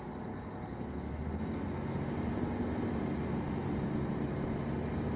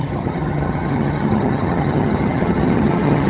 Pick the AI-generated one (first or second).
second